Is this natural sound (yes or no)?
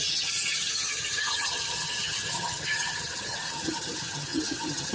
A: no